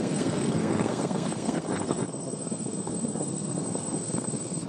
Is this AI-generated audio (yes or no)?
yes